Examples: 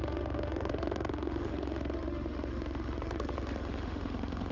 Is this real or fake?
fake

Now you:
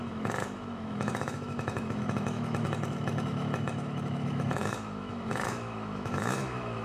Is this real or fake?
fake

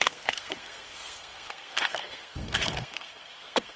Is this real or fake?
fake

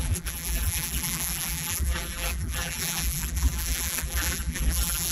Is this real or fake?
fake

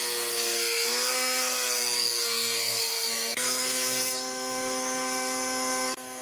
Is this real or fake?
fake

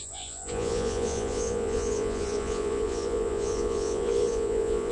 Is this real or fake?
fake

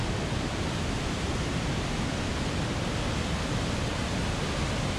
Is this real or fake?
real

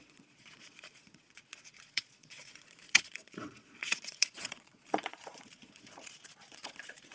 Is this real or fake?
fake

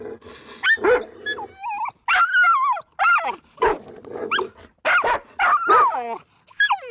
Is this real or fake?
real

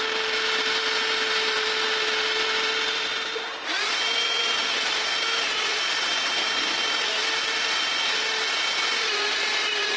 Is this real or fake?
real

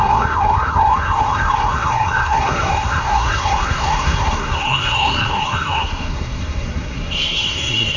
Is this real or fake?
fake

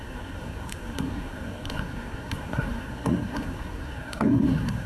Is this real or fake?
fake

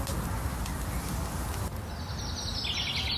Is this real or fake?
real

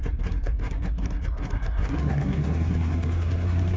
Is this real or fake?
fake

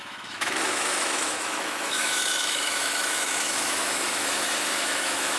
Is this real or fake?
fake